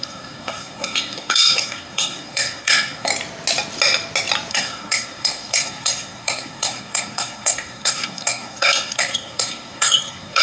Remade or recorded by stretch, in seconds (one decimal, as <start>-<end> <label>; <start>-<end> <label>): 0.0-3.1 remade; 3.1-4.5 recorded; 4.5-10.4 remade